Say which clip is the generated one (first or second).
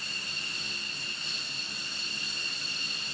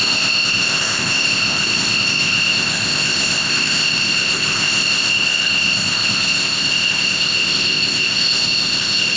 second